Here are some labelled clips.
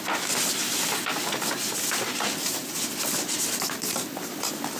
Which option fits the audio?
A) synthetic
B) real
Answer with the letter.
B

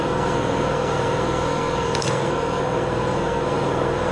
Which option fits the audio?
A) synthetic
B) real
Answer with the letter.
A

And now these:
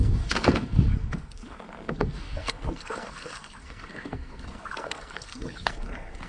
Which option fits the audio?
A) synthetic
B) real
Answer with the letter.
A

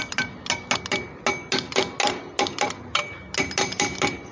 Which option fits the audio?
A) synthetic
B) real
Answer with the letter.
B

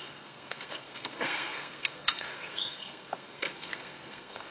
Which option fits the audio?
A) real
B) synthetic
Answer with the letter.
B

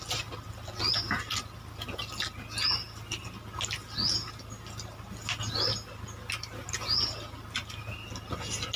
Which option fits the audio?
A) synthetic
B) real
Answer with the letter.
B